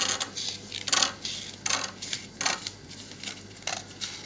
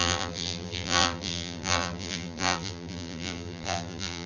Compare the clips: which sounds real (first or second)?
first